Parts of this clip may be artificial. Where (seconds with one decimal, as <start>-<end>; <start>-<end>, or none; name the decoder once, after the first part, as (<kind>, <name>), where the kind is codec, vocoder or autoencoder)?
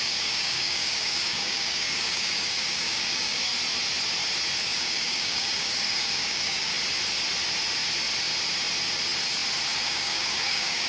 0.0-3.5 (codec, DAC); 4.6-6.7; 9.8-10.9